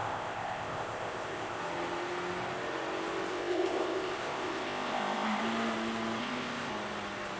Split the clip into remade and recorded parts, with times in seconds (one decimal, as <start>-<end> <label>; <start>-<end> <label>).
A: 0.0-1.6 remade; 1.6-3.3 recorded; 3.3-5.4 remade; 5.4-6.2 recorded; 6.2-6.7 remade; 6.7-7.4 recorded